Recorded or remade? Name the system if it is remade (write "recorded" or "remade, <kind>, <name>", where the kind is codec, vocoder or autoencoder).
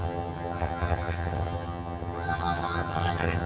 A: remade, vocoder, HiFi-GAN